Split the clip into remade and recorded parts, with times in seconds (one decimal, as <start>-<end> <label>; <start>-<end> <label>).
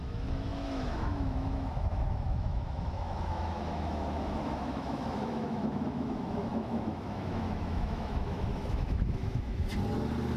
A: 0.0-9.7 remade; 9.7-10.4 recorded